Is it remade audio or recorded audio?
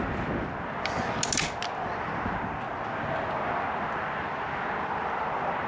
recorded